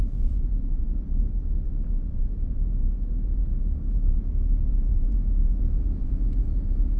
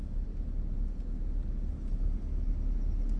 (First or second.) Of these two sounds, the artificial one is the first